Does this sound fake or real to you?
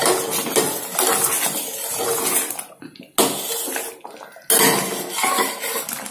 real